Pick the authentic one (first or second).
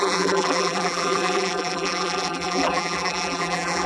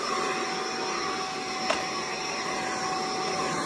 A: second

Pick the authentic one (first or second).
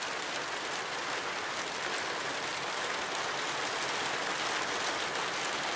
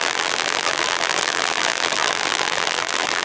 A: first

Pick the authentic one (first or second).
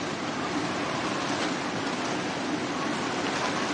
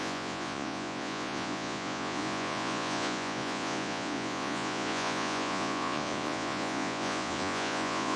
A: first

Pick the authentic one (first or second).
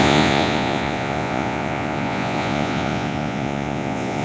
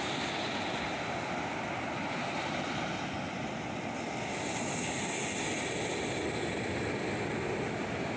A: second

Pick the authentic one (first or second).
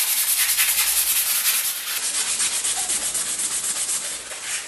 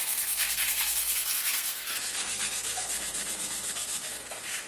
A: first